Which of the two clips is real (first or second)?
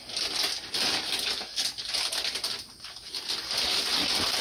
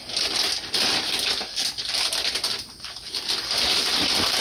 first